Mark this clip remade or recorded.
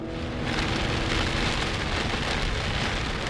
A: recorded